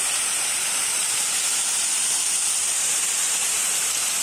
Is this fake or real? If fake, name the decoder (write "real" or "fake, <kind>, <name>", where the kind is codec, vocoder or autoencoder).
fake, vocoder, BigVGAN v2